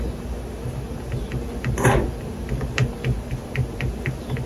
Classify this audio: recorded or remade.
recorded